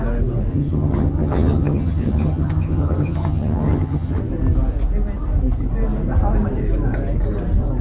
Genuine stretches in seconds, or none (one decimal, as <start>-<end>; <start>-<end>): 0.0-0.5; 4.2-7.8